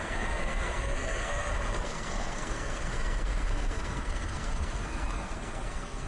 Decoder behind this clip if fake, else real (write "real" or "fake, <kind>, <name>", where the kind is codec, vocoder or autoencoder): fake, codec, SNAC